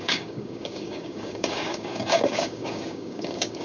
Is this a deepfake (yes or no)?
yes